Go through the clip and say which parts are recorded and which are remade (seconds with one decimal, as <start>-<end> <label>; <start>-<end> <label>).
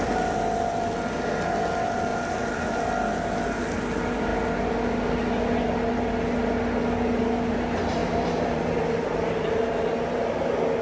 0.0-2.1 recorded; 2.1-2.8 remade; 2.8-8.0 recorded; 8.0-9.6 remade; 9.6-10.8 recorded